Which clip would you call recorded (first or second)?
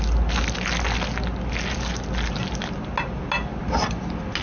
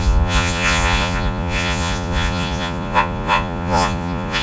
first